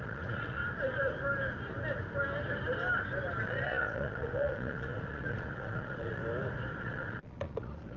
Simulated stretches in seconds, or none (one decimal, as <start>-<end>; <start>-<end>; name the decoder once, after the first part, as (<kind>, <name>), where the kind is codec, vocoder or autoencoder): 0.0-0.6 (vocoder, Vocos); 3.4-6.2; 6.8-8.0